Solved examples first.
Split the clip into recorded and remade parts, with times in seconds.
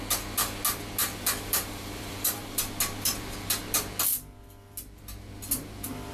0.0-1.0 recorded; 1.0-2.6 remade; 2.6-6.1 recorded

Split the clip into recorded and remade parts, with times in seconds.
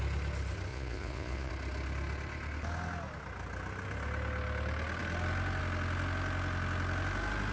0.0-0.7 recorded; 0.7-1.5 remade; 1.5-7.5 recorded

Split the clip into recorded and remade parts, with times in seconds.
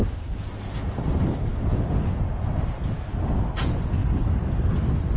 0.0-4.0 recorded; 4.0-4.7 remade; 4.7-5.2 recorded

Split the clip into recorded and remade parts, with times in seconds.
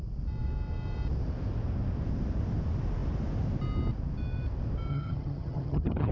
0.0-4.9 recorded; 4.9-6.1 remade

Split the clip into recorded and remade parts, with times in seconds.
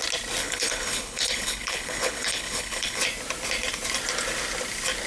0.0-0.4 recorded; 0.4-3.0 remade; 3.0-5.1 recorded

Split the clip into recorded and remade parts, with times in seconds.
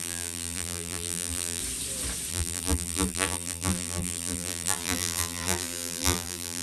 0.0-1.6 remade; 1.6-2.3 recorded; 2.3-6.6 remade